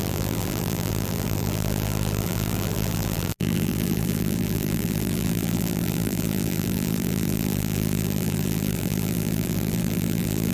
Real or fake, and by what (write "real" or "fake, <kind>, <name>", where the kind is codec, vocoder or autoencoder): fake, vocoder, BigVGAN v2